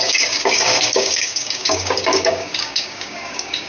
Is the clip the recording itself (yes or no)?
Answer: no